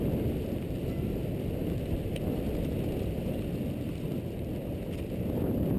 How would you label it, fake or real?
real